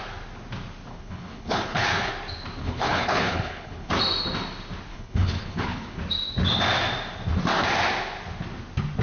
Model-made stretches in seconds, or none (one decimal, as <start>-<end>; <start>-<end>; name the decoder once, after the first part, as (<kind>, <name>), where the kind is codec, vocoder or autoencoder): 0.9-2.1 (codec, HILCodec); 2.6-3.9; 4.9-6.0